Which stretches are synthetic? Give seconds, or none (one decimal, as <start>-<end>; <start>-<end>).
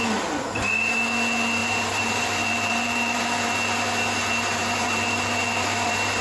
1.6-3.2; 4.6-6.2